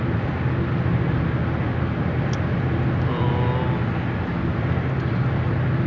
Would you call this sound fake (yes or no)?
no